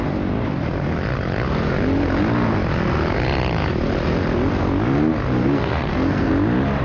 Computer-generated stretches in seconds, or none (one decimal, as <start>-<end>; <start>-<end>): 5.4-6.3